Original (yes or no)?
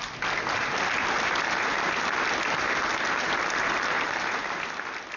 yes